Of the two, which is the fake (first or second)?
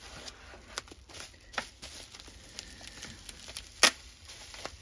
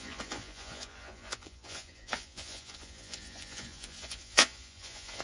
second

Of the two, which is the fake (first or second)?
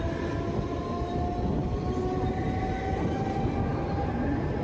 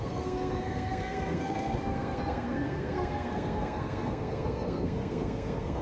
second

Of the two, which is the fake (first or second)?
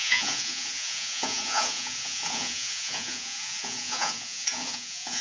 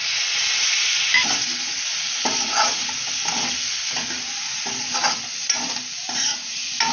first